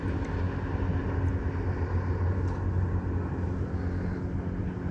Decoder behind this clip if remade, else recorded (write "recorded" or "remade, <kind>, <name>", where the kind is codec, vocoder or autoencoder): recorded